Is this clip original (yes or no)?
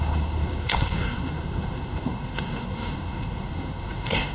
no